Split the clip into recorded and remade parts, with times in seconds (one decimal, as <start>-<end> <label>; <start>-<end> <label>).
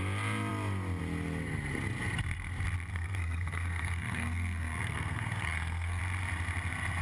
0.0-2.9 recorded; 2.9-6.0 remade; 6.0-7.0 recorded